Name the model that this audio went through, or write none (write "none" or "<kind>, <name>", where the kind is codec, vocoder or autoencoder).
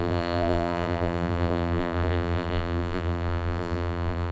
vocoder, BigVGAN v2